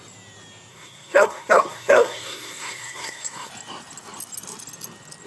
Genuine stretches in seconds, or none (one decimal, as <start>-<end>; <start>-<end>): 0.0-0.7; 3.5-5.3